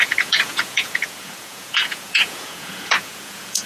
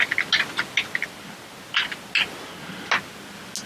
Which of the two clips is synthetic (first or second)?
first